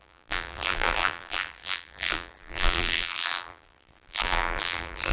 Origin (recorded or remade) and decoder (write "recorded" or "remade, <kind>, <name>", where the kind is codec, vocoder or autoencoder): remade, vocoder, BigVGAN v2